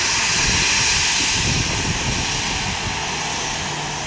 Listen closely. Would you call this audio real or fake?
real